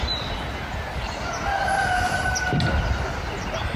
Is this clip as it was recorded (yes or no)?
yes